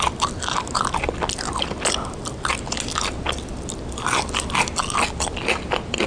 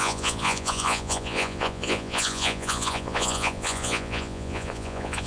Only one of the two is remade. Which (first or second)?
second